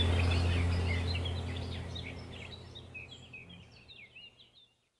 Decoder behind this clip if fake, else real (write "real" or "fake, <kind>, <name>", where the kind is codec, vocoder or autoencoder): real